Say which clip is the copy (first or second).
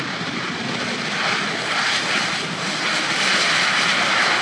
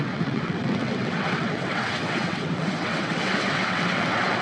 second